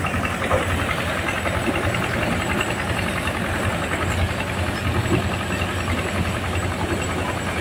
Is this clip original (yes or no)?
yes